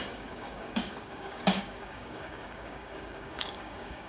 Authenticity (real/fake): fake